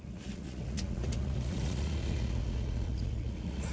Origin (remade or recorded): remade